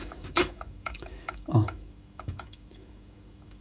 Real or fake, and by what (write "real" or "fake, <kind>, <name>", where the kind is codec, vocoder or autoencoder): fake, autoencoder, DAC-VAE